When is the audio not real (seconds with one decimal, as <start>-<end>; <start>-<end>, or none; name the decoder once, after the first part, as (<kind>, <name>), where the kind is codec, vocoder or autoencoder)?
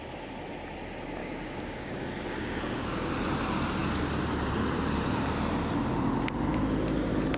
1.2-3.1 (codec, DAC)